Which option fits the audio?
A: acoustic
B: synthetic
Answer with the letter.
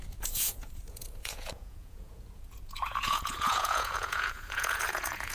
B